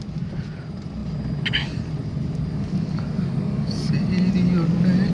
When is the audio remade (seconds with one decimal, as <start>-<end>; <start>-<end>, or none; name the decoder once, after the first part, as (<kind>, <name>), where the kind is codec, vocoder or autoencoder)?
2.5-3.9 (codec, DAC)